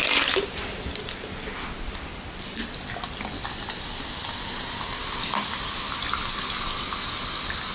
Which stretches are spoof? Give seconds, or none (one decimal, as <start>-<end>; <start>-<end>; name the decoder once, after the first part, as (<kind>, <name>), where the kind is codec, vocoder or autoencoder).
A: none